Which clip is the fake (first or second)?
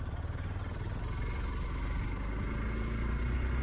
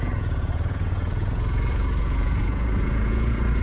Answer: second